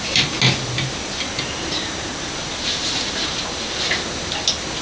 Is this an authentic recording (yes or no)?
yes